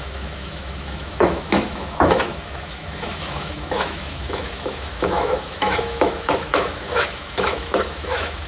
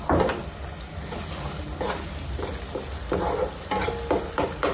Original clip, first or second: second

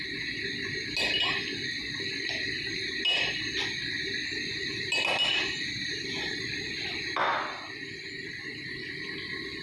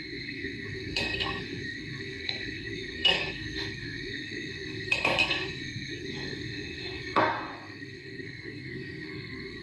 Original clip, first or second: first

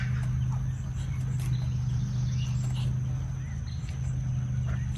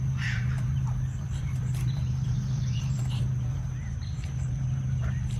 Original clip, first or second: first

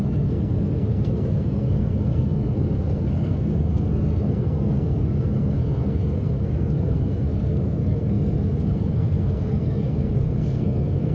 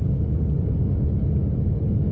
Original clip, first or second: second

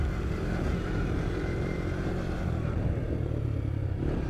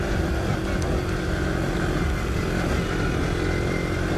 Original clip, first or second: second